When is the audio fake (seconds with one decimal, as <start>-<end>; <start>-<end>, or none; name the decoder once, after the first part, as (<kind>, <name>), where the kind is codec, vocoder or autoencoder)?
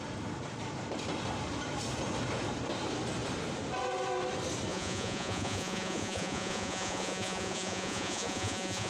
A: 4.7-8.9 (vocoder, Vocos)